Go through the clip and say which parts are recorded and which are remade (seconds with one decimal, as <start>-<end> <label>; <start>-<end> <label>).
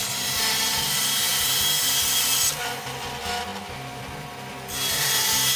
0.0-5.6 recorded